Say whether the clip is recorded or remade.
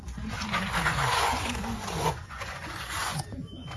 remade